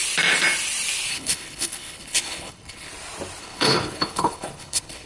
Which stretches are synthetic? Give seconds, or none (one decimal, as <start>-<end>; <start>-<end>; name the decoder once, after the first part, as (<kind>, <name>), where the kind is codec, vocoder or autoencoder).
1.1-2.9 (codec, HILCodec); 3.4-5.1